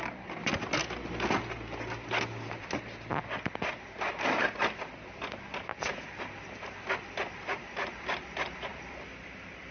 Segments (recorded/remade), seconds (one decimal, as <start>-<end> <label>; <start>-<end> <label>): 0.0-9.7 recorded